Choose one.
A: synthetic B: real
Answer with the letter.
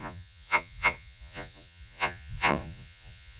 A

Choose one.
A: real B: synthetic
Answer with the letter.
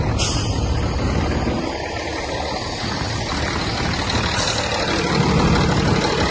A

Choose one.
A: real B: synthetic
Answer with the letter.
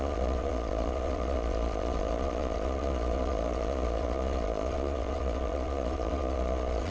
B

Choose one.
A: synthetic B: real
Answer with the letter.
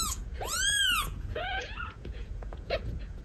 A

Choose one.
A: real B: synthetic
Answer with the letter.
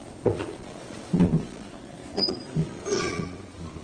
B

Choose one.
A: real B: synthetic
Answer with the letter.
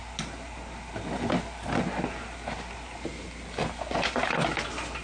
A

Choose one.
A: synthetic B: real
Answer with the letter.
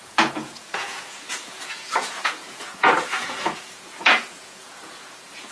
A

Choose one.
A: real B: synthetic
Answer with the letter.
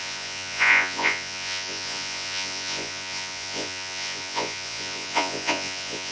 B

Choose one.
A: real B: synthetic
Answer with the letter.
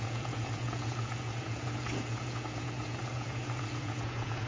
B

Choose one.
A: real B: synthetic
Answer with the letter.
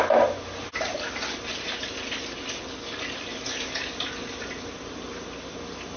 A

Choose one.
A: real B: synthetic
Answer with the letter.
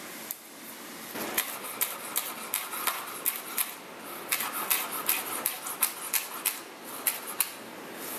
A